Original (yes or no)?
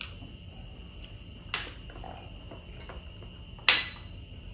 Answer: yes